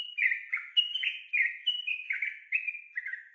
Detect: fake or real real